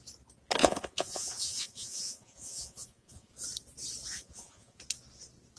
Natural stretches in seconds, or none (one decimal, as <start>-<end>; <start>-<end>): 0.0-0.6; 3.3-4.1; 4.8-5.6